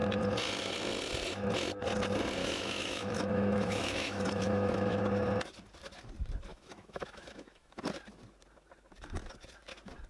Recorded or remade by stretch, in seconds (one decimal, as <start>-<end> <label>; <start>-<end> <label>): 0.0-2.4 recorded; 2.4-5.0 remade; 5.0-6.5 recorded; 6.5-7.8 remade; 7.8-10.1 recorded